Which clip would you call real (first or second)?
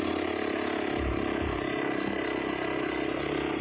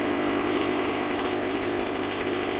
first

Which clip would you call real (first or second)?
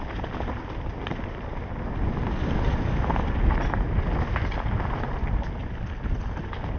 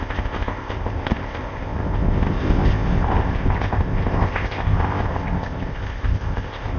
first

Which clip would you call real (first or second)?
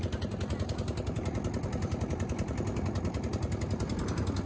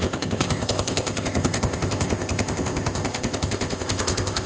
first